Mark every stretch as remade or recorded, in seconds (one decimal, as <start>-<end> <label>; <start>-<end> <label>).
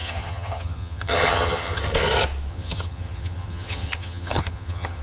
0.0-1.8 remade; 1.8-2.5 recorded; 2.5-5.0 remade